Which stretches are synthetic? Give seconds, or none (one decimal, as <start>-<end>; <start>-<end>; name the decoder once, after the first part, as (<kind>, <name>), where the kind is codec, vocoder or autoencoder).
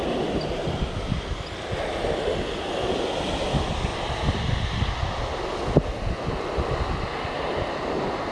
none